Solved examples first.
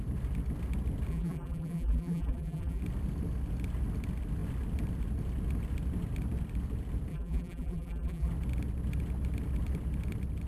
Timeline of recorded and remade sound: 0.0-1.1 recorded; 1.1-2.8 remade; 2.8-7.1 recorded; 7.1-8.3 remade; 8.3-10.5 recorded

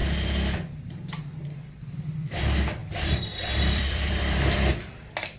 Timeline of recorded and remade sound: 0.0-0.9 remade; 0.9-2.8 recorded; 2.8-4.7 remade; 4.7-5.4 recorded

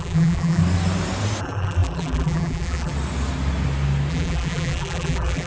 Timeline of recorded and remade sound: 0.0-0.6 remade; 0.6-1.4 recorded; 1.4-2.9 remade; 2.9-4.1 recorded; 4.1-5.5 remade

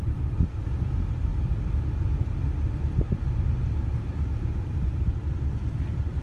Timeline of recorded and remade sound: 0.0-1.3 remade; 1.3-4.7 recorded; 4.7-6.2 remade

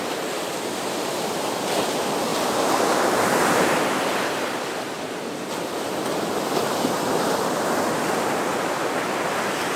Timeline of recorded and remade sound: 0.0-2.3 recorded; 2.3-6.8 remade; 6.8-8.5 recorded; 8.5-9.1 remade; 9.1-9.8 recorded

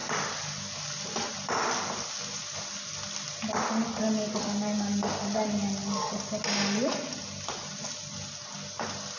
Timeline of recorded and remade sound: 0.0-9.2 recorded

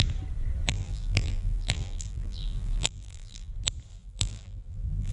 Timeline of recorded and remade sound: 0.0-0.7 recorded; 0.7-3.5 remade; 3.5-3.9 recorded; 3.9-5.1 remade

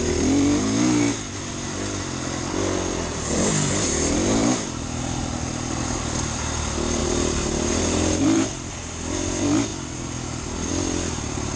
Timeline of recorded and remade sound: 0.0-7.0 recorded; 7.0-8.7 remade; 8.7-11.6 recorded